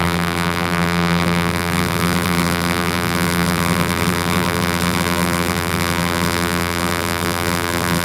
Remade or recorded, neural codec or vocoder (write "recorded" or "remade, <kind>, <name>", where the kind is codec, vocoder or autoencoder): remade, vocoder, BigVGAN v2